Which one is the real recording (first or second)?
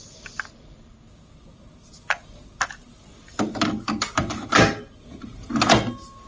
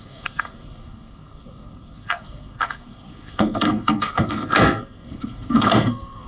first